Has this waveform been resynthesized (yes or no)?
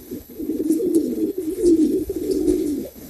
yes